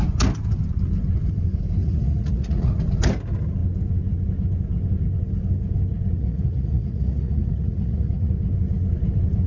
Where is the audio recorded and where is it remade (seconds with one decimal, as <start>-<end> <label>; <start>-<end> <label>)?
0.0-1.8 recorded; 1.8-2.7 remade; 2.7-6.2 recorded; 6.2-8.3 remade; 8.3-9.5 recorded

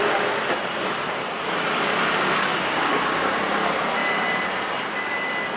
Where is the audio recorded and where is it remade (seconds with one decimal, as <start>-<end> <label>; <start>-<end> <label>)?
0.0-2.5 recorded; 2.5-3.2 remade; 3.2-5.6 recorded

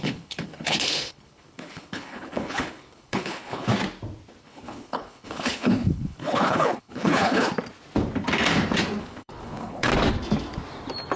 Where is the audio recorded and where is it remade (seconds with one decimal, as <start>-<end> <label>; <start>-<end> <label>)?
0.0-3.7 remade; 3.7-4.4 recorded; 4.4-7.5 remade; 7.5-9.0 recorded; 9.0-9.9 remade; 9.9-11.2 recorded

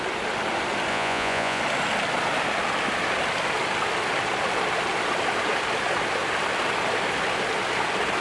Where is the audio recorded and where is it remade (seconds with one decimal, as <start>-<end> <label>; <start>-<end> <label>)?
0.0-0.9 recorded; 0.9-1.6 remade; 1.6-8.2 recorded

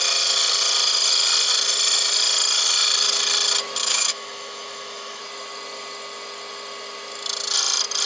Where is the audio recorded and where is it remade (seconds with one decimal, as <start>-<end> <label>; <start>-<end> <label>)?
0.0-3.8 recorded; 3.8-5.2 remade; 5.2-8.1 recorded